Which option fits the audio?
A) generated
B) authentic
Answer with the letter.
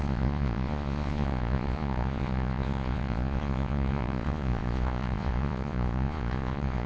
A